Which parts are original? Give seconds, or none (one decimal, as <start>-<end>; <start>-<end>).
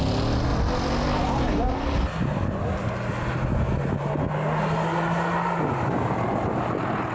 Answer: 0.0-7.1